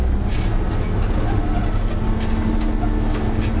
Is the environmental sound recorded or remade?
recorded